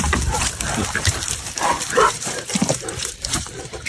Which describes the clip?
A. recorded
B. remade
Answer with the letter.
B